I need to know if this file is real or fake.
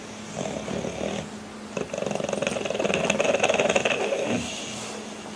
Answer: real